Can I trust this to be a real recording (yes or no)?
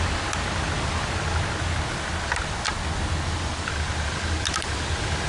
yes